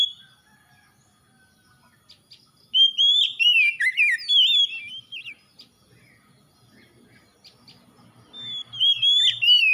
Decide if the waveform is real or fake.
real